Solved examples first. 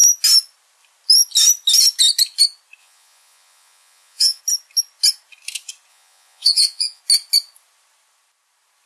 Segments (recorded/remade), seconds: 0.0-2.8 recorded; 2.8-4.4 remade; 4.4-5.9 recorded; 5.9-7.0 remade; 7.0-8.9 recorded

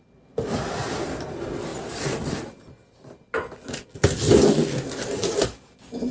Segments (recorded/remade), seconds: 0.0-6.1 recorded

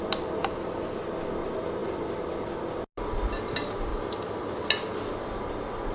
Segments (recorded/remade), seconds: 0.0-0.4 recorded; 0.4-1.0 remade; 1.0-3.9 recorded; 3.9-4.6 remade; 4.6-5.9 recorded